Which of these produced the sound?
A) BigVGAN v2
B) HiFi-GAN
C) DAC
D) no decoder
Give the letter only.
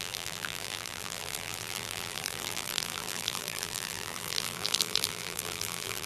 A